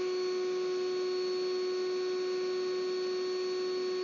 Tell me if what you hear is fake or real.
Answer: real